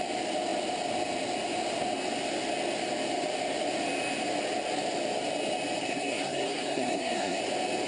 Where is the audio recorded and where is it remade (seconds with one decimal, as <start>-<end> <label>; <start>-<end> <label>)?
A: 0.0-5.8 recorded; 5.8-7.4 remade; 7.4-7.9 recorded